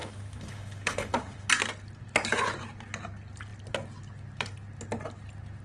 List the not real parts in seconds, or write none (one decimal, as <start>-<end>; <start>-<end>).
0.0-1.5